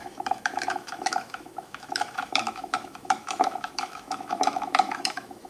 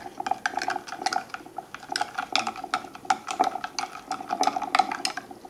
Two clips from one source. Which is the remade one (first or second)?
first